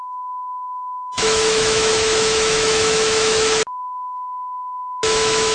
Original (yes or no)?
no